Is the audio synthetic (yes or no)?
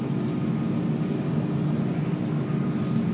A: no